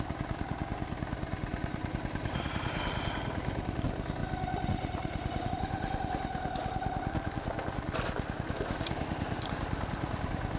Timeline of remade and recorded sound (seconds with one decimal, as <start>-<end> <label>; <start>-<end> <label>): 0.0-10.6 recorded